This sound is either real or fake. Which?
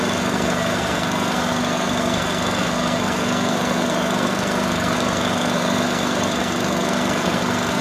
fake